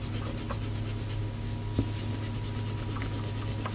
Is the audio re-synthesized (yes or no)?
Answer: no